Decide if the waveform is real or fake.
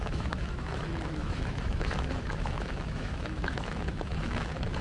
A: fake